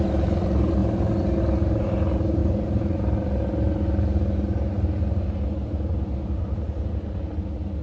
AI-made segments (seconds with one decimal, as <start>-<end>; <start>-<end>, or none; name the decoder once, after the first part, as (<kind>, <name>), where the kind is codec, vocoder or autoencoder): none